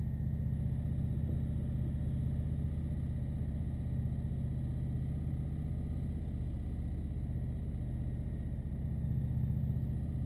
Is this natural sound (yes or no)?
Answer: yes